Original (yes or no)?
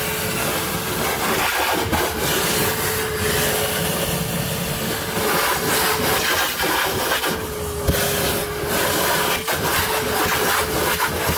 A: yes